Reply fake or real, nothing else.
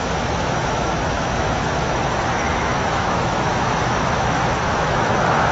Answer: fake